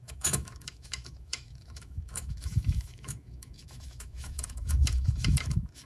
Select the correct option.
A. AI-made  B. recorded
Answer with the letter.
A